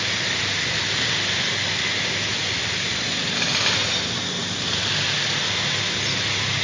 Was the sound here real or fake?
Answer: real